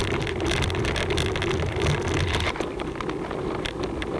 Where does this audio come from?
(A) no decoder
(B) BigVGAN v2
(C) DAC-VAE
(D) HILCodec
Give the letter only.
A